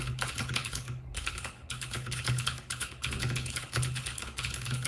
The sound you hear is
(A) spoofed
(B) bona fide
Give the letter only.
A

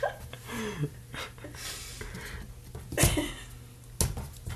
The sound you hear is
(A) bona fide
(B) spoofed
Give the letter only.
A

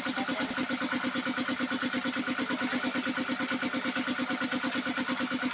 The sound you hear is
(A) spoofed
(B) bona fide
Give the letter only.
B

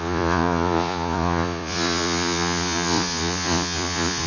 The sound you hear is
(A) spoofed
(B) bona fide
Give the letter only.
A